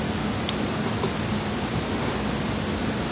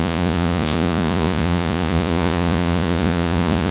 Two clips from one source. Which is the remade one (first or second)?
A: second